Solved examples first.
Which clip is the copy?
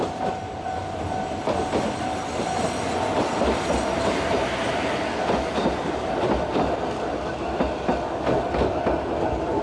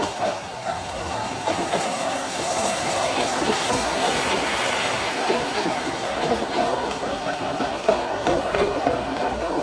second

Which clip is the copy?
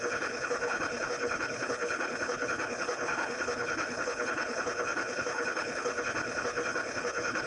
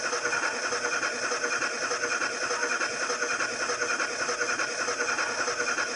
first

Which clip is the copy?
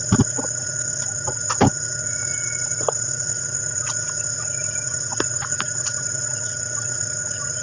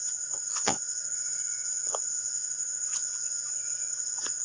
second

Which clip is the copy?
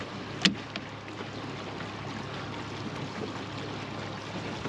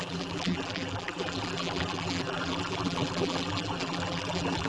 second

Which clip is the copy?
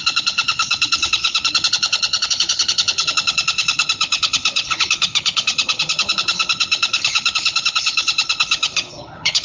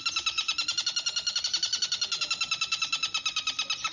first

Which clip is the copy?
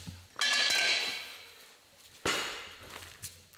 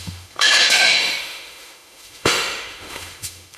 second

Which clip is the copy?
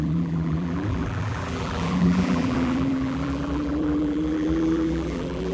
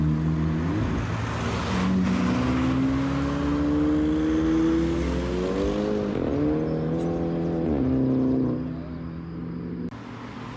first